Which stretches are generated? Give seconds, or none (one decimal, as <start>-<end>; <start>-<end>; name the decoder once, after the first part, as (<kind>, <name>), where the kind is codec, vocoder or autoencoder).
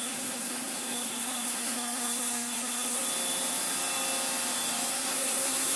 0.0-3.0 (codec, SNAC); 4.9-5.8